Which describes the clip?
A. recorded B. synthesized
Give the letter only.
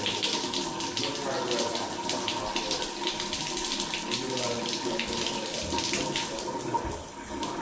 A